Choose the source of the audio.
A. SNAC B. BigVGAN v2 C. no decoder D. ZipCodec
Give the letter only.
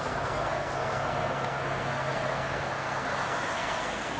A